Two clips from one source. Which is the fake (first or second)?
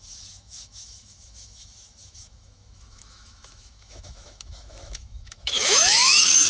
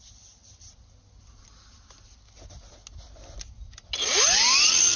first